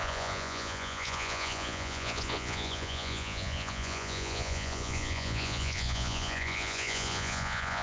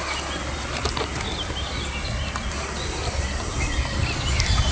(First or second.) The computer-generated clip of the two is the first